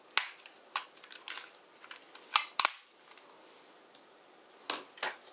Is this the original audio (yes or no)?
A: yes